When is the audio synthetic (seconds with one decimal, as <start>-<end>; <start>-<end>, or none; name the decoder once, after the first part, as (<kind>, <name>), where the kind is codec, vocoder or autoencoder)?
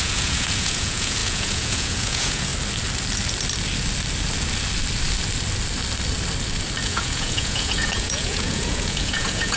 0.0-2.5 (vocoder, Vocos); 6.8-9.6